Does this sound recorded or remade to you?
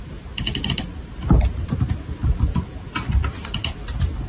remade